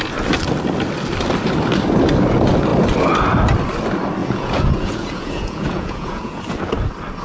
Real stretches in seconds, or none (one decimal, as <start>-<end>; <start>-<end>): 0.0-4.2; 6.4-7.2